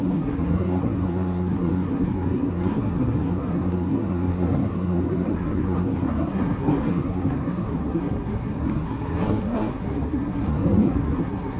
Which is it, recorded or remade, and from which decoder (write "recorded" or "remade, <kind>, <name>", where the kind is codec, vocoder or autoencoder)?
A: remade, codec, SNAC